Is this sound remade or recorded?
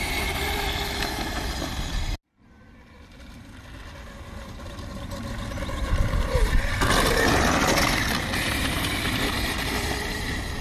recorded